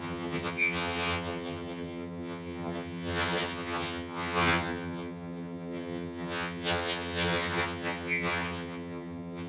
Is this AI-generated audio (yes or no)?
yes